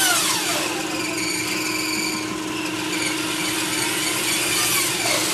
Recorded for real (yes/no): yes